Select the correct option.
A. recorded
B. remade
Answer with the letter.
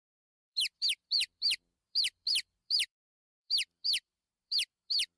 B